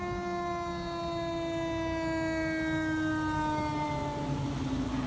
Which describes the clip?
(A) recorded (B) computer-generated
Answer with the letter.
A